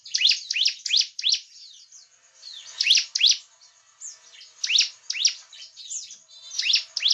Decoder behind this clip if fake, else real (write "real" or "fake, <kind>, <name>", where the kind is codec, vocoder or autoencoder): real